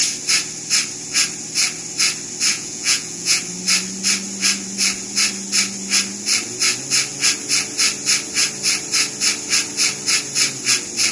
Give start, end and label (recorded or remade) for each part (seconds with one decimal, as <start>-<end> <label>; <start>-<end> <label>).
0.0-2.5 recorded; 2.5-3.4 remade; 3.4-11.1 recorded